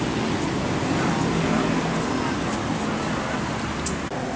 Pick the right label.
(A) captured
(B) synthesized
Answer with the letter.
A